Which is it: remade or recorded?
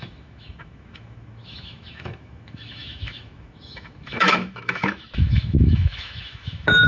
remade